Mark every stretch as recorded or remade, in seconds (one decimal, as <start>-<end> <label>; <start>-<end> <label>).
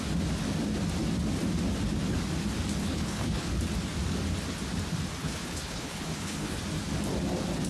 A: 0.0-2.8 recorded; 2.8-3.5 remade; 3.5-5.2 recorded; 5.2-6.6 remade; 6.6-7.7 recorded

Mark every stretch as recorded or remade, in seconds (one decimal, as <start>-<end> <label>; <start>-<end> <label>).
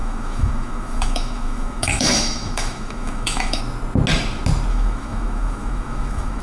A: 0.0-3.6 remade; 3.6-4.7 recorded; 4.7-6.4 remade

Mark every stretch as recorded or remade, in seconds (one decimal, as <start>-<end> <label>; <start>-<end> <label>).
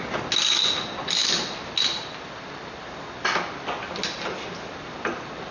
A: 0.0-5.5 recorded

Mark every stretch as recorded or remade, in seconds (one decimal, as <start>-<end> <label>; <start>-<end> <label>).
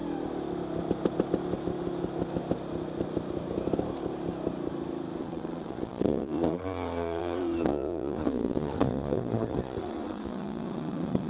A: 0.0-5.2 recorded; 5.2-11.3 remade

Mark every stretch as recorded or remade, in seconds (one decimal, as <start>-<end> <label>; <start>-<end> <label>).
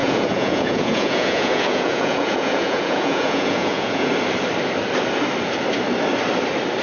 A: 0.0-4.1 remade; 4.1-6.8 recorded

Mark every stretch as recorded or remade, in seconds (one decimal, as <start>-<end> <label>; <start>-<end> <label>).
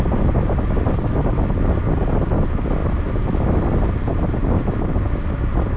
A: 0.0-5.8 recorded